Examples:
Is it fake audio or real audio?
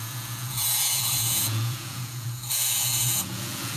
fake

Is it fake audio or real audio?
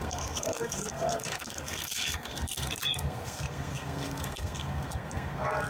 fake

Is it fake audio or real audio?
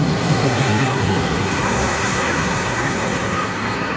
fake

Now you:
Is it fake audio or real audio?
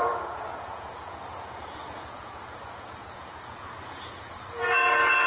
fake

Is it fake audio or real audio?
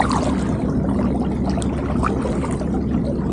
real